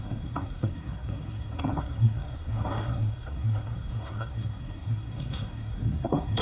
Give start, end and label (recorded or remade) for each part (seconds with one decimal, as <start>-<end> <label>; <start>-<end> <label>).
0.0-6.4 remade